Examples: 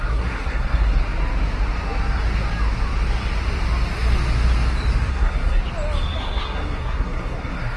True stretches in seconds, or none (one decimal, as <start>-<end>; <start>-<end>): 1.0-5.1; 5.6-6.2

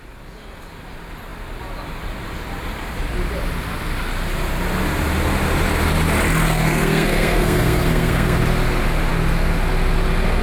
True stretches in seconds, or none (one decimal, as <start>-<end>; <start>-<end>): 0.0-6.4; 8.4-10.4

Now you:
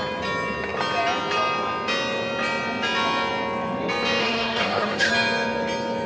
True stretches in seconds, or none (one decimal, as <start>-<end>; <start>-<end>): 0.0-4.2; 5.1-6.1

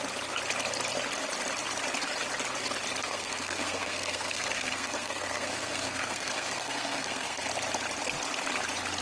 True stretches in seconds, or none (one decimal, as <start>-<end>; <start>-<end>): 0.0-3.0; 7.5-9.0

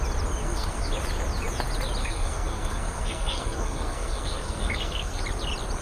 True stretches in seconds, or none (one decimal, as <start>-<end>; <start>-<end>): 0.0-0.4; 0.9-2.0; 5.2-5.8

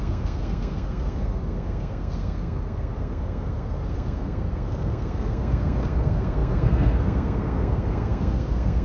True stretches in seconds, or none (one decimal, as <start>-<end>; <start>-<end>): none

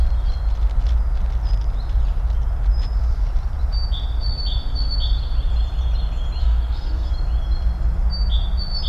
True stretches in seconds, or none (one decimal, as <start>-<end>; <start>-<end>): 0.0-6.4; 7.1-8.9

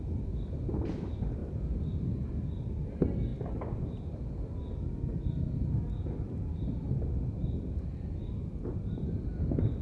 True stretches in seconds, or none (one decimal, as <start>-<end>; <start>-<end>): 0.0-9.8